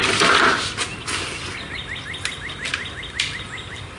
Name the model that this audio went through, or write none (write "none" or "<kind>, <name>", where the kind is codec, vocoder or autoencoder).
none